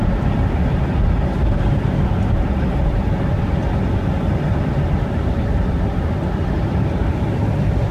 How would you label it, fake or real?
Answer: real